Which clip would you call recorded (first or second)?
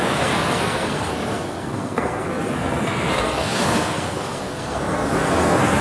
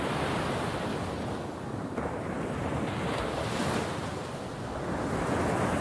second